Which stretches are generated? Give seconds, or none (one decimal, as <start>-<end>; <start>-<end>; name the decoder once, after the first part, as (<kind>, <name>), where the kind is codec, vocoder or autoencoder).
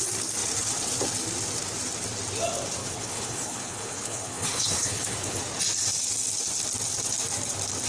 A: 2.8-5.4 (codec, HILCodec)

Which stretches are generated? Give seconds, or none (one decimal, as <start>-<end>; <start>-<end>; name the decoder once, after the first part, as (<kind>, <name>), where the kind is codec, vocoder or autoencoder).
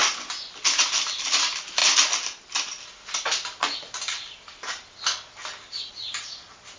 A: 0.8-1.8 (vocoder, BigVGAN v2); 5.9-6.8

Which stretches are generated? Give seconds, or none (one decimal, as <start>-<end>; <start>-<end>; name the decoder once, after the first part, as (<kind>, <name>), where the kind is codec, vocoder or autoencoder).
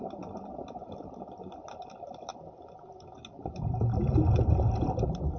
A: 0.0-2.3 (vocoder, BigVGAN v2)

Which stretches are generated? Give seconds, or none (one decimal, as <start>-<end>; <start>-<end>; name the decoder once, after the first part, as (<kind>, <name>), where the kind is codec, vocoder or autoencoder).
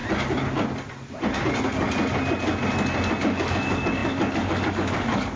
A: 3.2-5.4 (codec, DAC)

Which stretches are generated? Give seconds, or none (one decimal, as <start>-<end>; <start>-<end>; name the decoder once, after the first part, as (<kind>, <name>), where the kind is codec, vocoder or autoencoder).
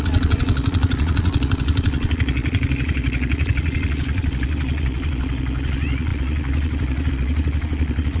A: 0.0-8.2 (vocoder, Vocos)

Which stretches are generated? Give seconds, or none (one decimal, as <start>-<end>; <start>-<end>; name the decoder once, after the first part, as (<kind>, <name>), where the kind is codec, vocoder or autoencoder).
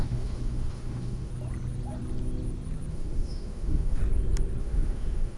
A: 0.0-1.3 (autoencoder, DAC-VAE); 2.9-4.0; 4.6-5.4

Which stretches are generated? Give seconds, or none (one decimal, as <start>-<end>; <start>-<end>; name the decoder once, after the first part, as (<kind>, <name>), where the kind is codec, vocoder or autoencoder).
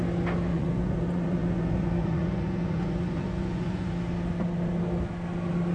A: 0.5-3.9 (vocoder, Vocos)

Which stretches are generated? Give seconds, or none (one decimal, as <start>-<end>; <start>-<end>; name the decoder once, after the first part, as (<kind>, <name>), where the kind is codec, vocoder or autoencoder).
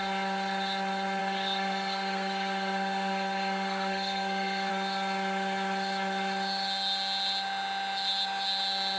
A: 1.2-4.7 (codec, SNAC)